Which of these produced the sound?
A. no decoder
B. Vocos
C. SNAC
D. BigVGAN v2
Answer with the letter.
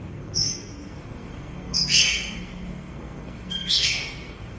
C